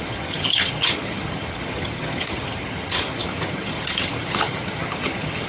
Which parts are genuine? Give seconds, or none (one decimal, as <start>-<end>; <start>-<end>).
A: none